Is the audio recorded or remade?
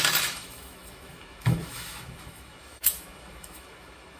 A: remade